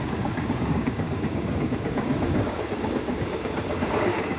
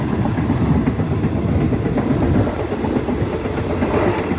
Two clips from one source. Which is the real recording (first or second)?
second